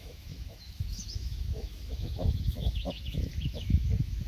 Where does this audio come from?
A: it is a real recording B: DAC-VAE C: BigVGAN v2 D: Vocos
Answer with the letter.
B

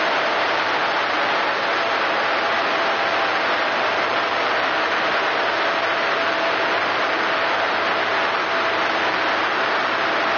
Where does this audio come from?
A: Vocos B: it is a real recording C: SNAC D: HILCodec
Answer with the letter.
B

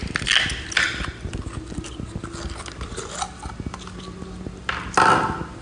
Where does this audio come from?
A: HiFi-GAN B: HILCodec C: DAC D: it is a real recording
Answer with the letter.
D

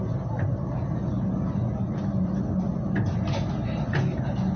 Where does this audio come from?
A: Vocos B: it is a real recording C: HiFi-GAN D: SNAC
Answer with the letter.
B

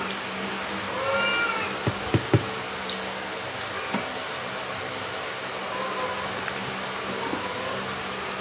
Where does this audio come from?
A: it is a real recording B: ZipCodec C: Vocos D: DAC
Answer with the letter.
A